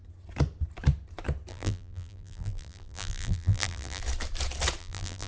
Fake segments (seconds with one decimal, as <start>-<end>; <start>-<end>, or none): 1.5-4.0; 4.8-5.3